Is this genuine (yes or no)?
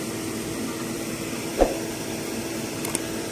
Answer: no